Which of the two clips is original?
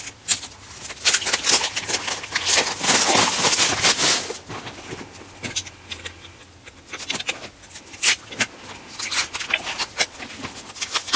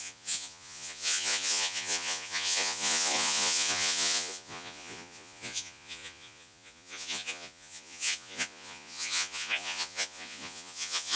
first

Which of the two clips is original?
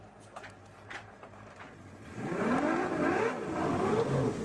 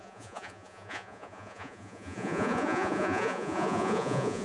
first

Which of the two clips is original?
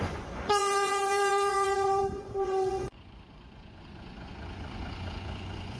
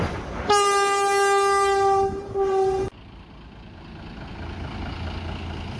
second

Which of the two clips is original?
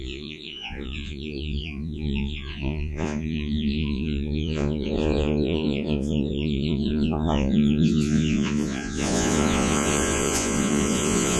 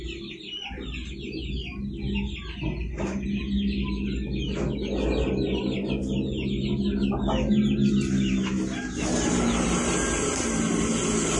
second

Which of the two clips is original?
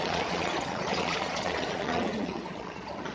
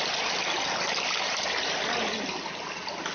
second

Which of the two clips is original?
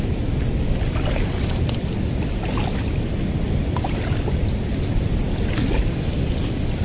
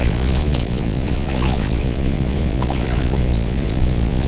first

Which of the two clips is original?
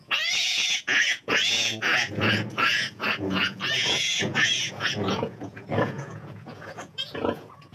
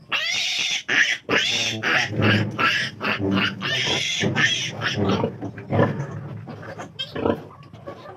second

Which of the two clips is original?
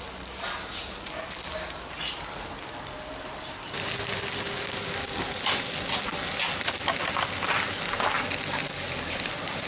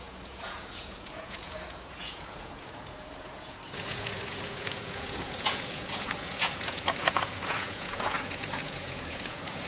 first